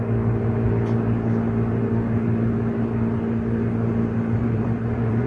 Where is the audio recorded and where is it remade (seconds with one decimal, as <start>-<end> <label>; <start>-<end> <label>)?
0.0-4.4 recorded; 4.4-5.3 remade